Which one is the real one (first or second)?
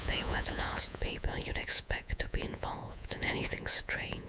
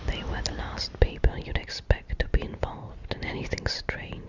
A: second